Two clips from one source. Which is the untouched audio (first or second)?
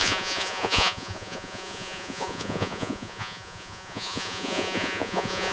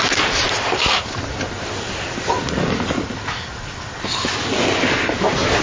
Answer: second